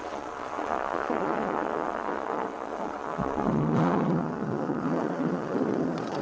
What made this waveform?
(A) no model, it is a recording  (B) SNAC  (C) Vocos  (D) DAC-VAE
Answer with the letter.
C